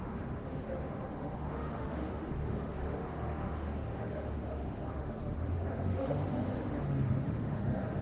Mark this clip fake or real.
fake